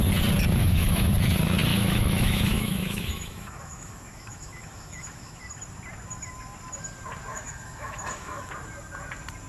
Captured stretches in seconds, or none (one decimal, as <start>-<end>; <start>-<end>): 0.0-0.6; 1.1-1.7; 5.4-7.3; 8.5-9.5